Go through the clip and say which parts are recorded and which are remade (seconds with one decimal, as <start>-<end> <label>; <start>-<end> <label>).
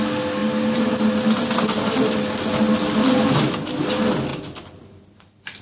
0.0-5.6 recorded